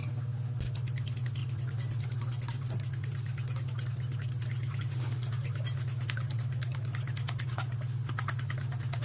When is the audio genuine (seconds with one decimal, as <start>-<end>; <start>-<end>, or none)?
0.0-9.0